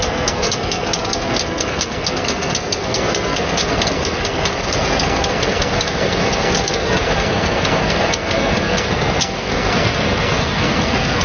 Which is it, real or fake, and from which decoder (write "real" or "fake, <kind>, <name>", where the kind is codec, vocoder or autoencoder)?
fake, codec, SNAC